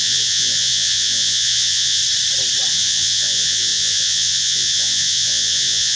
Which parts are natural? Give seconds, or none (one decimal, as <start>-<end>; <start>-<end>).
2.0-2.7

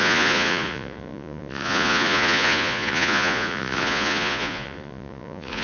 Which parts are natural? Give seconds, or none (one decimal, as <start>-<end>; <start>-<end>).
none

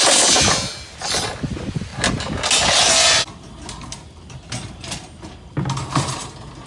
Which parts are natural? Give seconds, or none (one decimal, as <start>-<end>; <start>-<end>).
0.0-6.7